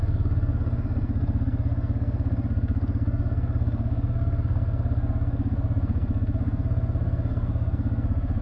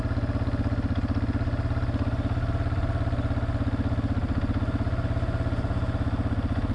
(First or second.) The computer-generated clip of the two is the first